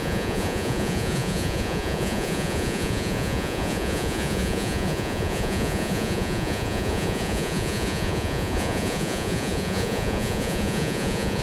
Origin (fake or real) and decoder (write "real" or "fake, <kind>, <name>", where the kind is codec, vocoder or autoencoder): fake, vocoder, Vocos